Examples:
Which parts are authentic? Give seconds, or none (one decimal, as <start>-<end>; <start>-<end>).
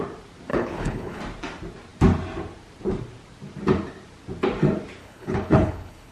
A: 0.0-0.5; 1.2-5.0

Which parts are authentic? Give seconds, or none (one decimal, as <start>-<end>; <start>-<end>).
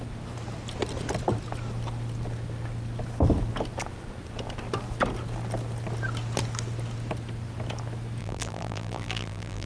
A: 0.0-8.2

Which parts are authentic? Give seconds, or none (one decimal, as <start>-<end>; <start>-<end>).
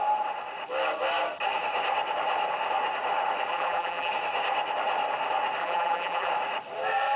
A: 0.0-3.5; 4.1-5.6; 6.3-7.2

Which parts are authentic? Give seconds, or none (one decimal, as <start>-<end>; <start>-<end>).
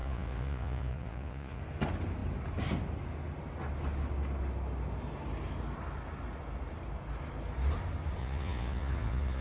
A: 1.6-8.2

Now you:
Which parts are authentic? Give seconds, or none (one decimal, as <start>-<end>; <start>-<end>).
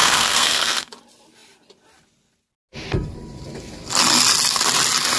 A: 0.9-5.2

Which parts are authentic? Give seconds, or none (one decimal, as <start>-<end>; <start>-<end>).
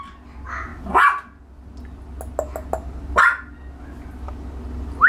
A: 0.0-5.1